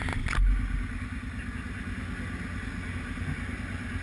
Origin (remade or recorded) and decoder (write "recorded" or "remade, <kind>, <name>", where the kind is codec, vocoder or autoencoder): recorded